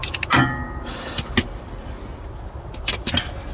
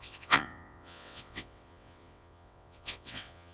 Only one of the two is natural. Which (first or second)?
first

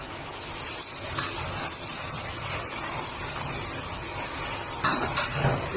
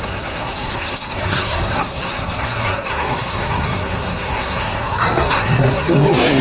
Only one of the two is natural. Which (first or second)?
first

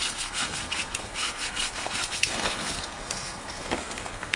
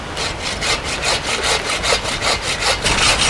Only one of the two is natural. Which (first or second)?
second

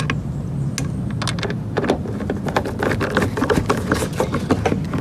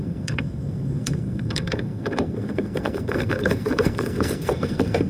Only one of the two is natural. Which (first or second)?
first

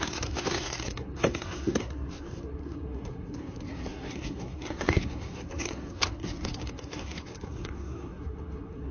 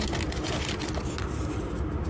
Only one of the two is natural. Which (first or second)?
second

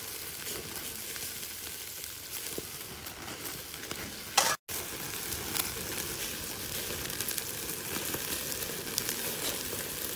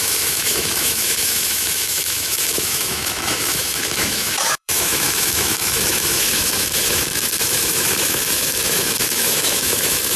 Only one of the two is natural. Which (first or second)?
first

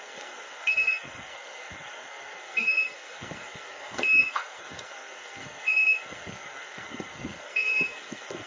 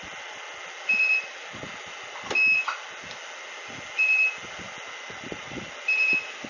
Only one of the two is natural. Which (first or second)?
second